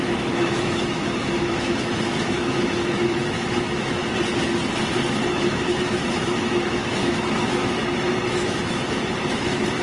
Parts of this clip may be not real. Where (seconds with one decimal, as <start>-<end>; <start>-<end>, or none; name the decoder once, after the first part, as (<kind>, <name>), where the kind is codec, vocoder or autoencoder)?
0.0-4.0 (autoencoder, DAC-VAE); 5.3-7.8; 8.3-9.8